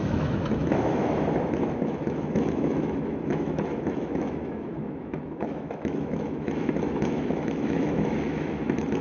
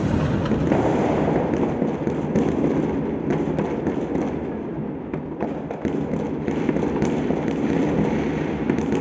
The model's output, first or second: first